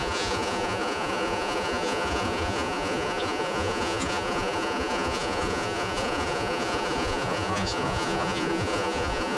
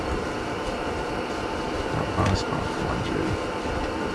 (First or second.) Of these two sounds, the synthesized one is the first